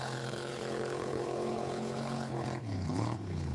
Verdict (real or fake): fake